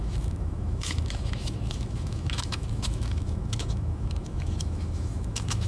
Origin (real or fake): fake